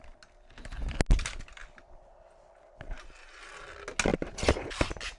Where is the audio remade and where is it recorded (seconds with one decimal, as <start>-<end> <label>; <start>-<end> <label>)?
0.0-5.2 recorded